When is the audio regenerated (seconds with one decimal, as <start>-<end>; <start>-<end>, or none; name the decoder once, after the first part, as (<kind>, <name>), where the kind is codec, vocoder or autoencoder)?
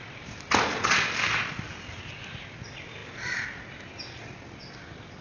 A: none